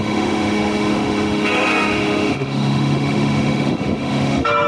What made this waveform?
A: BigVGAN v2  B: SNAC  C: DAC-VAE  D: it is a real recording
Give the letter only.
C